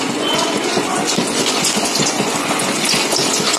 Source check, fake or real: fake